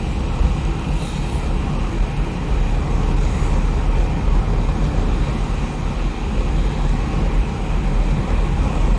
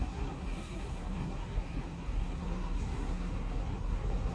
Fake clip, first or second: second